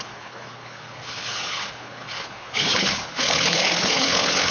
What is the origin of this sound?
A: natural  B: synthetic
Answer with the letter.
B